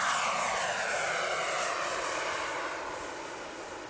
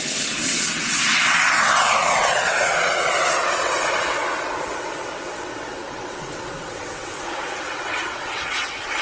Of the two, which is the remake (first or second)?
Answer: second